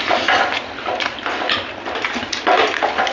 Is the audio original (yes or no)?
yes